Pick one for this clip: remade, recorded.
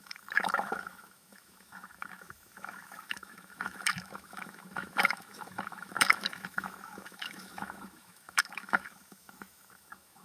remade